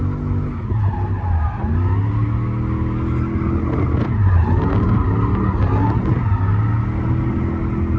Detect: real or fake real